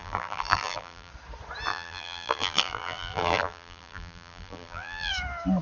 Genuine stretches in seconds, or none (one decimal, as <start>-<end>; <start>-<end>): 1.1-1.7; 5.1-5.6